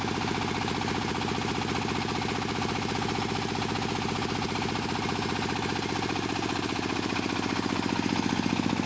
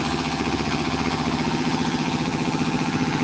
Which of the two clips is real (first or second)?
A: first